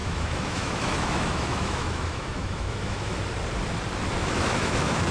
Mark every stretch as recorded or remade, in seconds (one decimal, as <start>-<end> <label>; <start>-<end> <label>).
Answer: 0.0-3.1 remade; 3.1-4.2 recorded; 4.2-5.1 remade